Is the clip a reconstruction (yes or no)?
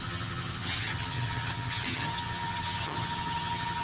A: yes